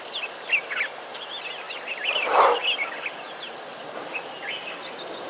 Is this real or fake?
real